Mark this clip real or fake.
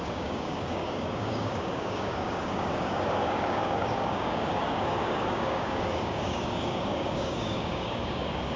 fake